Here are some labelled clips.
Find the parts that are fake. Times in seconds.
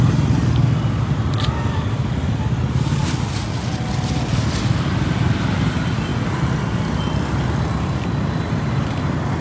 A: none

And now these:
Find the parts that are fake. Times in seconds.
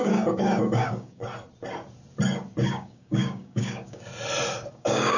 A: 0.0-1.2 (codec, DAC); 2.6-4.1; 4.7-5.2